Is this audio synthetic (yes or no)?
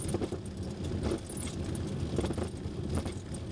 no